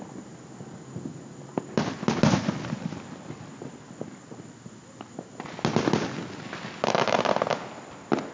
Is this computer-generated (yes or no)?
no